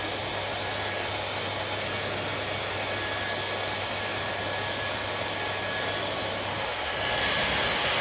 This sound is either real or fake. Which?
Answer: real